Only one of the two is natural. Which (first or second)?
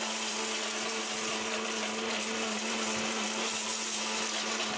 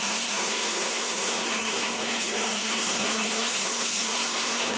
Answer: first